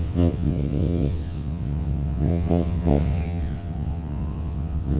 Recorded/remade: remade